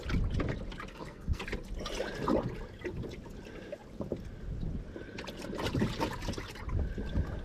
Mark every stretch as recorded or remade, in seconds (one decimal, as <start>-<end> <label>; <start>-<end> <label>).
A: 0.0-0.9 recorded; 0.9-1.4 remade; 1.4-7.4 recorded